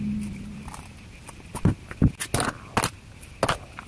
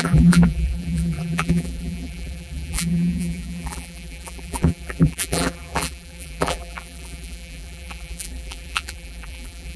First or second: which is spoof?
second